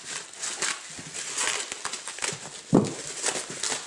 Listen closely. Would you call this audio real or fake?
real